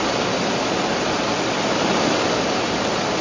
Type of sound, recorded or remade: recorded